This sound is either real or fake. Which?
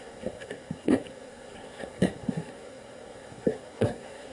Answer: fake